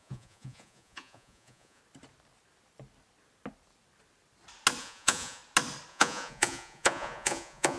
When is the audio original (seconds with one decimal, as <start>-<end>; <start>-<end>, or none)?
1.8-4.8; 5.4-5.9